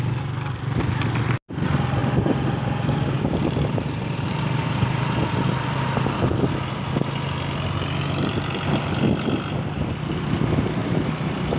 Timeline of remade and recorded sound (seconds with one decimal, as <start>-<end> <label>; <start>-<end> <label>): 0.0-2.0 recorded; 2.0-5.8 remade; 5.8-10.8 recorded; 10.8-11.6 remade